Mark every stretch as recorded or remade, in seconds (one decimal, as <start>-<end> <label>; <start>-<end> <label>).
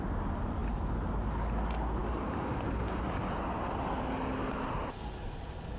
0.0-5.8 recorded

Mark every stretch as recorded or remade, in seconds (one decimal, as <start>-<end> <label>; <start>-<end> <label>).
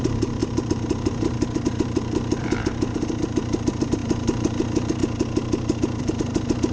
0.0-5.0 remade; 5.0-6.0 recorded; 6.0-6.7 remade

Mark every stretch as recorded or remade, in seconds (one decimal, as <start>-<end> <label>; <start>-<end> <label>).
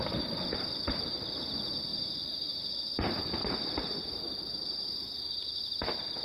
0.0-1.9 recorded; 1.9-2.7 remade; 2.7-6.2 recorded